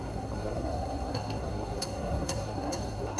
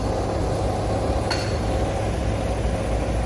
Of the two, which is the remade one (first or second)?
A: first